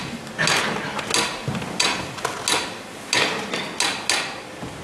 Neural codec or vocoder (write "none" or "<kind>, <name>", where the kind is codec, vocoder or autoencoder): none